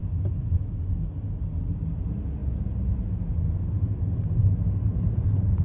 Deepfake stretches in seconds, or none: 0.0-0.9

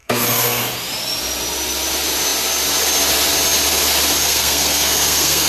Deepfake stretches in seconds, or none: 0.0-0.6; 4.2-5.5

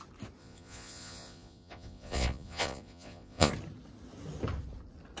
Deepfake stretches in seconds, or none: 0.4-3.5